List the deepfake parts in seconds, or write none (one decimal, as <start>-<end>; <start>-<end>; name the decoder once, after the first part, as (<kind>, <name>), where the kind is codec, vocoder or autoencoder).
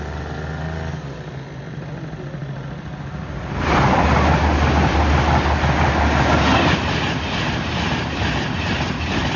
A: none